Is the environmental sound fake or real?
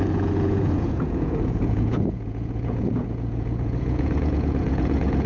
fake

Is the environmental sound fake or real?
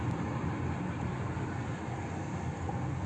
real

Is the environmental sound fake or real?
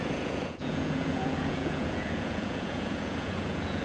fake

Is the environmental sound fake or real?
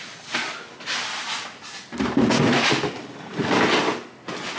real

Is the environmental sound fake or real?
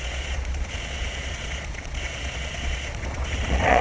fake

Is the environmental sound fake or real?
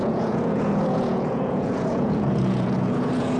fake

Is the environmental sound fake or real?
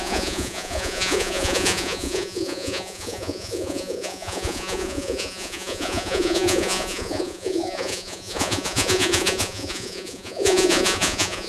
fake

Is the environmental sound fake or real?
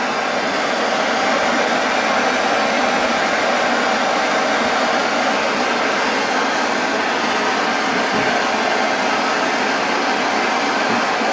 real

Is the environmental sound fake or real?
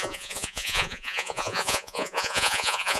fake